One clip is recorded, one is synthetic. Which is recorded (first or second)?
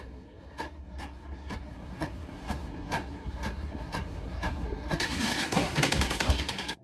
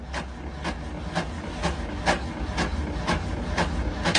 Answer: second